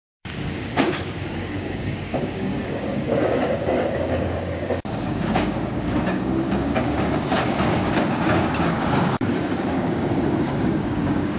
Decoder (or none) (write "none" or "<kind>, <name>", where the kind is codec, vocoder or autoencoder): codec, DAC